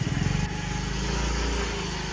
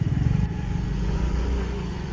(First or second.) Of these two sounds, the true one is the first